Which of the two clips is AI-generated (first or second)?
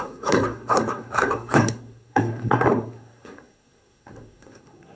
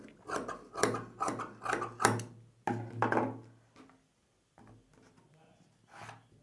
first